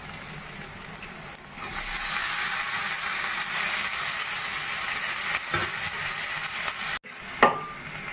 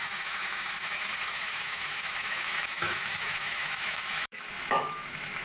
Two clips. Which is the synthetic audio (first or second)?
second